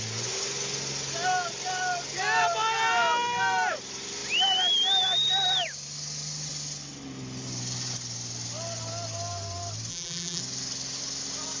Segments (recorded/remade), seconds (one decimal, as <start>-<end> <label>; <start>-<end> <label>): 0.0-9.9 recorded; 9.9-10.4 remade; 10.4-11.6 recorded